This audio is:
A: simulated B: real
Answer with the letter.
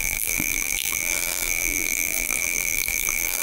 A